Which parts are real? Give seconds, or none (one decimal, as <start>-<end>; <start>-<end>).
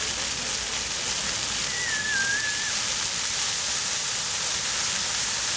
0.0-5.6